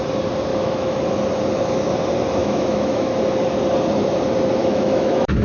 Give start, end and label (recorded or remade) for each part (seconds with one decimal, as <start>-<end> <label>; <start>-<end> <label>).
0.0-0.5 recorded; 0.5-1.0 remade; 1.0-2.4 recorded; 2.4-3.2 remade; 3.2-4.6 recorded; 4.6-5.4 remade